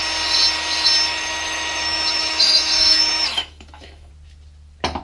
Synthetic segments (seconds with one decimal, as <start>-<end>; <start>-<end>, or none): 1.1-4.1